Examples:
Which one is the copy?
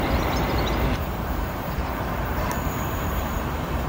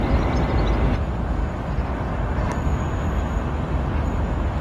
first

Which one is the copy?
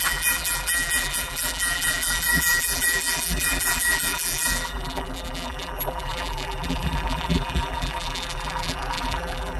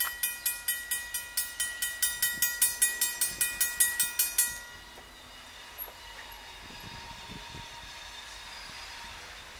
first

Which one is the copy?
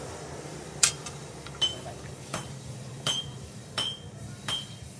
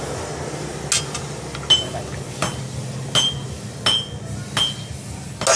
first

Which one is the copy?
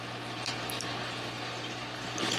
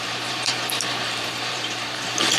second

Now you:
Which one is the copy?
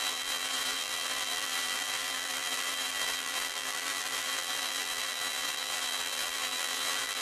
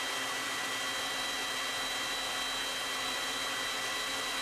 first